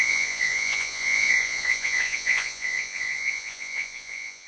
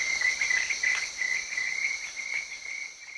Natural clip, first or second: second